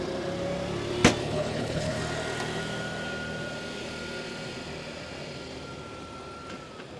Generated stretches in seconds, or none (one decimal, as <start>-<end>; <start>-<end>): 1.2-2.0

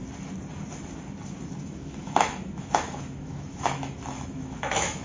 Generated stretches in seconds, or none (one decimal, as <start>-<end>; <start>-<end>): 1.6-5.0